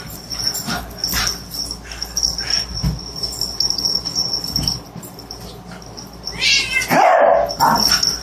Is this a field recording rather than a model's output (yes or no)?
yes